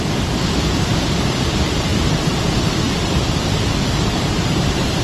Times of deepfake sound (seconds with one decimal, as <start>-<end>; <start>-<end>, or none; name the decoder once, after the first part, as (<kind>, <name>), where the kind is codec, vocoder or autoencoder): 0.0-0.9 (vocoder, BigVGAN v2); 1.4-5.0